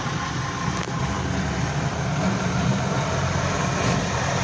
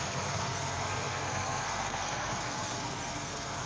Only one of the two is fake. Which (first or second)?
second